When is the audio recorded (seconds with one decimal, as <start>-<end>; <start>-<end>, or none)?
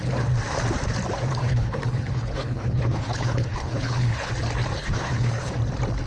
0.0-1.4; 4.3-4.8; 5.5-6.1